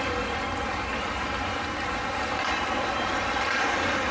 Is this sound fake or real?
real